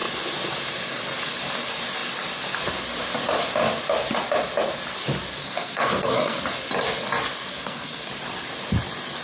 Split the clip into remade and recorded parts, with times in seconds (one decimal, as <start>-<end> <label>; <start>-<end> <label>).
0.0-5.4 recorded; 5.4-6.4 remade; 6.4-7.5 recorded; 7.5-8.1 remade; 8.1-9.2 recorded